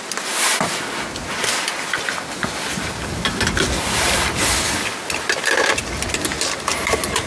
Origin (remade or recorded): recorded